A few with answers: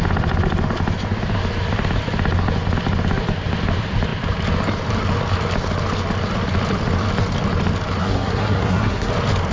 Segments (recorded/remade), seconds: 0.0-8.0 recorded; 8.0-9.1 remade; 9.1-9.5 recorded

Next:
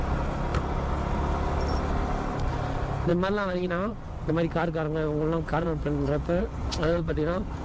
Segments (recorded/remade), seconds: 0.0-3.1 recorded; 3.1-4.3 remade; 4.3-5.5 recorded; 5.5-7.1 remade; 7.1-7.6 recorded

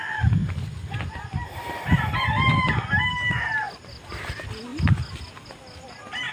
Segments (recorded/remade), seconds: 0.0-6.3 recorded